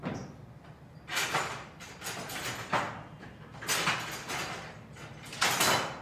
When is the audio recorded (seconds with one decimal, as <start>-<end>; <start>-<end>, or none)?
0.0-6.0